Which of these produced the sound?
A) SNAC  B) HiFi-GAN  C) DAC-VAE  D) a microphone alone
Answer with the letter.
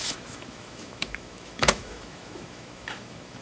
C